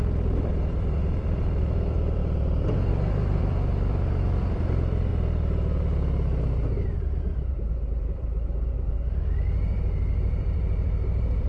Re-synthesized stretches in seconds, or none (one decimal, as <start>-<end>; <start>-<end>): 0.0-5.1; 7.5-11.5